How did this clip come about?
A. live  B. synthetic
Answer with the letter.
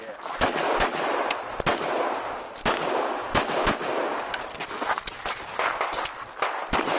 A